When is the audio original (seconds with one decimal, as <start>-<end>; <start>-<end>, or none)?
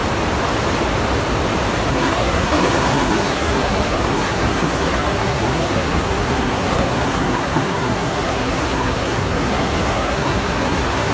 0.0-1.9